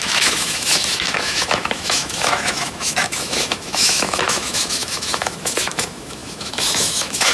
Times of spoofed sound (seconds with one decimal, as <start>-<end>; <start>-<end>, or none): 0.0-7.3